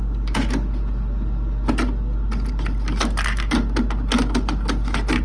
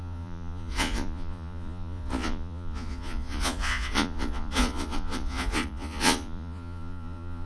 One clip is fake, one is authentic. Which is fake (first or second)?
second